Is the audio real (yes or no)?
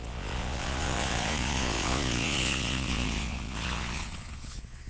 no